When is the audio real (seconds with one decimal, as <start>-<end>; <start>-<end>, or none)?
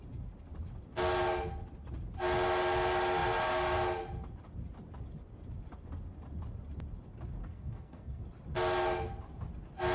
0.0-7.4; 8.2-9.9